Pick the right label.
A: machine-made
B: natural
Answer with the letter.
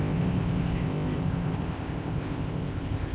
A